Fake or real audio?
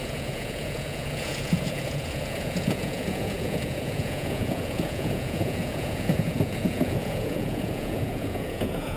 fake